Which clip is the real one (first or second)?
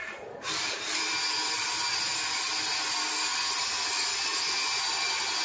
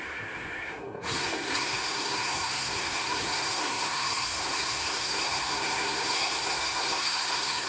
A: first